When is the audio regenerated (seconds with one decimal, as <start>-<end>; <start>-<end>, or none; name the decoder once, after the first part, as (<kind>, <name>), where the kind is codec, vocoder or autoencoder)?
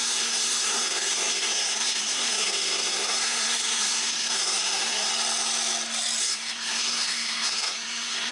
0.0-5.1 (codec, SNAC); 6.2-8.3